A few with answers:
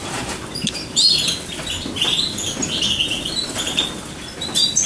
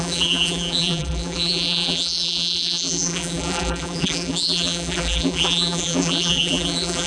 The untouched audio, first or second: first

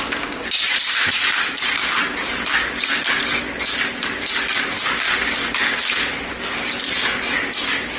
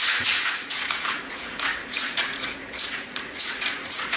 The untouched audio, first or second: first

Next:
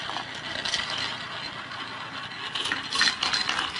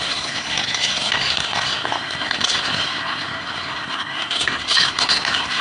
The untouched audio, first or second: first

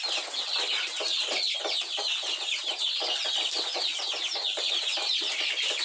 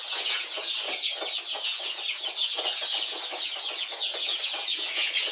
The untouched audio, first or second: first